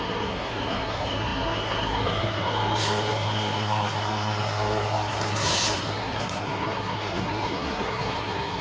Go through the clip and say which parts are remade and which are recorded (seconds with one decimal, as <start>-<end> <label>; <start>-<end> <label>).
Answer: 0.0-8.6 remade